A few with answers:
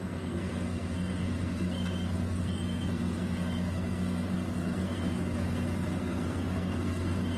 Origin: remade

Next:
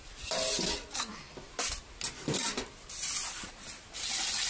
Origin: recorded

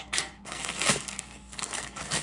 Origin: remade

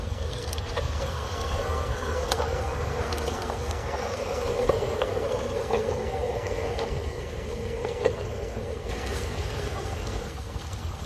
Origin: remade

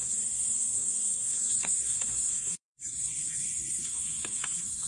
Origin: remade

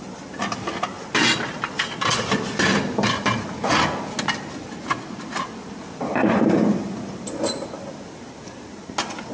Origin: recorded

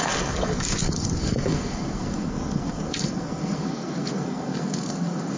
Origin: remade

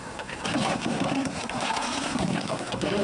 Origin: remade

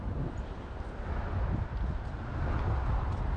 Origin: recorded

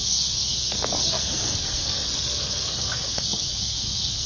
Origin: remade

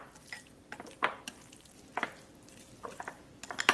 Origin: recorded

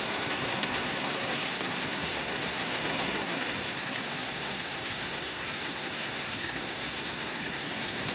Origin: remade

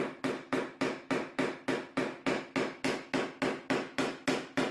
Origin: recorded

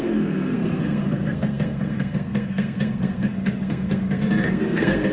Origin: remade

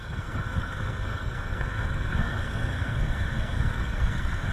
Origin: remade